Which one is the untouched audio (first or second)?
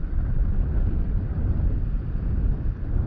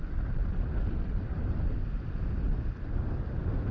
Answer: second